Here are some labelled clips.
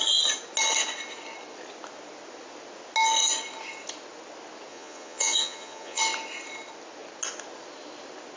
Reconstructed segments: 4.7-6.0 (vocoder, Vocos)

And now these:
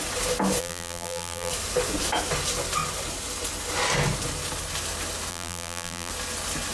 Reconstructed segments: 0.6-1.5 (vocoder, BigVGAN v2); 5.3-6.1